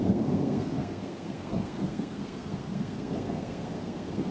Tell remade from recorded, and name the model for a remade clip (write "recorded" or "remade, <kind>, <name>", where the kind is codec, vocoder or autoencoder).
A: remade, codec, SNAC